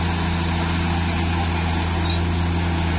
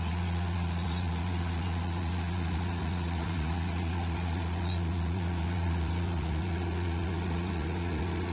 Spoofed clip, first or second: second